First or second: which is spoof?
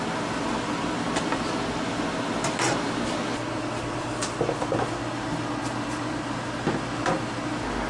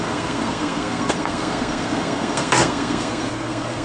second